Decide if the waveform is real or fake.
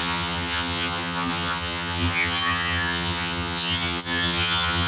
fake